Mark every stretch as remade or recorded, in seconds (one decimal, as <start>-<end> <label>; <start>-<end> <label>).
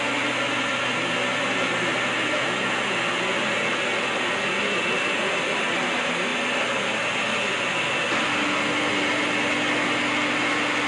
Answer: 0.0-10.9 recorded